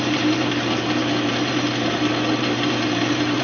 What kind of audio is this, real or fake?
fake